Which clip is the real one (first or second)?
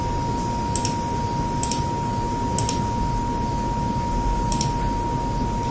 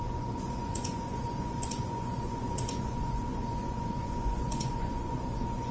first